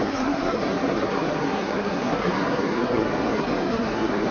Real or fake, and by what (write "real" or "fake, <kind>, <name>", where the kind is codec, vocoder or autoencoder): fake, codec, SNAC